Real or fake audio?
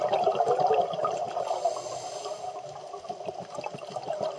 real